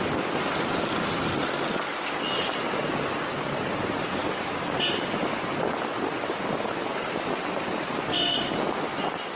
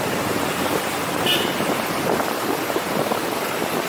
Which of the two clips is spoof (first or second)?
second